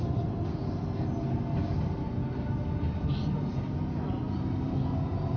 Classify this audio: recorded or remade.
recorded